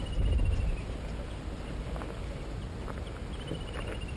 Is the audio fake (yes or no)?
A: no